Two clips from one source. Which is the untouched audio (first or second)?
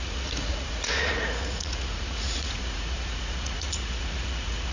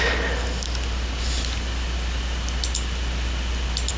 second